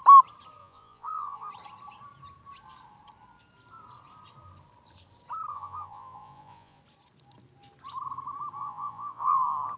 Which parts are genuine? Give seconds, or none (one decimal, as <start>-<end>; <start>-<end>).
0.0-0.6; 1.5-5.5; 6.8-8.6; 9.3-9.8